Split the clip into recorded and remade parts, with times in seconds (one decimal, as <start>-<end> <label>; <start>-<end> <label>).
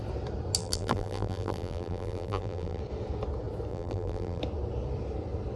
0.0-0.6 recorded; 0.6-2.8 remade; 2.8-3.7 recorded; 3.7-4.4 remade; 4.4-5.6 recorded